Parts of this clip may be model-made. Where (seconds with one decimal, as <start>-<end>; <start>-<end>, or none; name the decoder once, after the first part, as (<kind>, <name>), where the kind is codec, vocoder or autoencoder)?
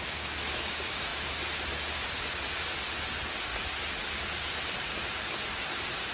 none